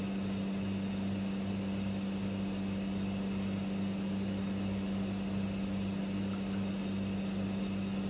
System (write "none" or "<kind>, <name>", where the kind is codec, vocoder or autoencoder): none